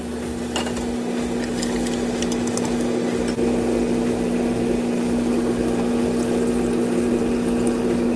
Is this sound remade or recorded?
recorded